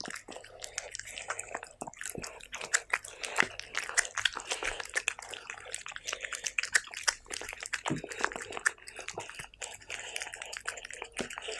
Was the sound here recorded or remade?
recorded